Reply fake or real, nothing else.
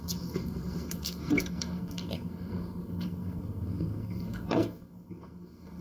fake